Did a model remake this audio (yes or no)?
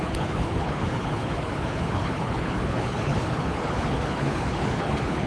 yes